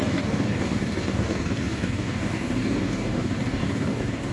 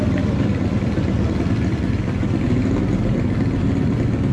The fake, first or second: first